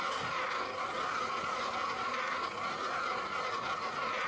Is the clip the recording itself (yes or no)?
no